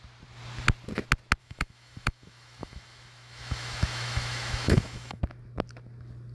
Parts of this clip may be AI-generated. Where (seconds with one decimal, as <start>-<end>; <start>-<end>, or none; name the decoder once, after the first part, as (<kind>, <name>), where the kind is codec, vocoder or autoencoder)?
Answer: 1.4-5.2 (autoencoder, DAC-VAE)